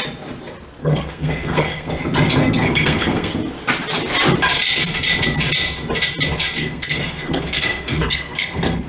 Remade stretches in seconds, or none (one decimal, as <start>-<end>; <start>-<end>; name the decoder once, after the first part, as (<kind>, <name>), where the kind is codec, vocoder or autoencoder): 0.8-1.9 (codec, SNAC); 2.4-3.3; 6.6-8.9